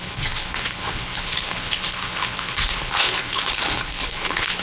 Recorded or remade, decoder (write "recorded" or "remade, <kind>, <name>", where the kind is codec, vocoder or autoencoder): remade, codec, HILCodec